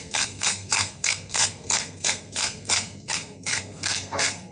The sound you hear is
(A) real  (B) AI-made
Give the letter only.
B